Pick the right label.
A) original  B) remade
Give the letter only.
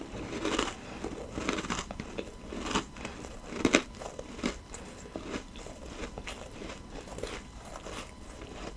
B